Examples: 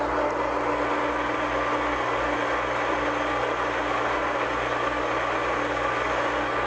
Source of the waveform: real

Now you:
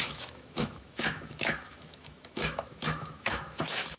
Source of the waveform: fake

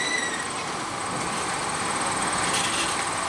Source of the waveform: real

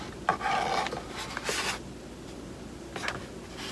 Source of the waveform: real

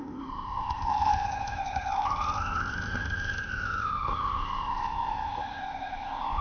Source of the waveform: fake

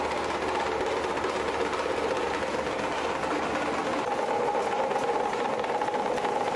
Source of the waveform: real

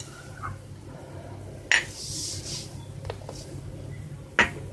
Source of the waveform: real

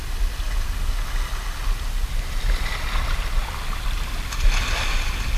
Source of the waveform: real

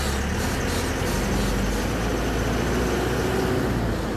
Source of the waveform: real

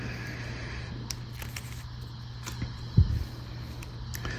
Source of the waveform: real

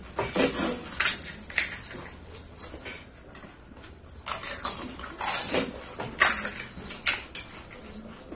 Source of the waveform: real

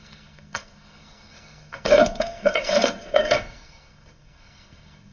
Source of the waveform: fake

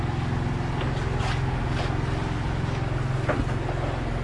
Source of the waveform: real